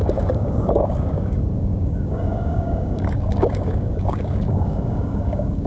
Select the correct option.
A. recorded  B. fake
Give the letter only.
B